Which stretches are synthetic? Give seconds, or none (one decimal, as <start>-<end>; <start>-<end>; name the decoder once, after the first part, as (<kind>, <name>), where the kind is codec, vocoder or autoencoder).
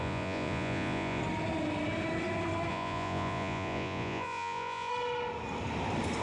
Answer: 0.0-1.2 (vocoder, Vocos); 2.7-4.9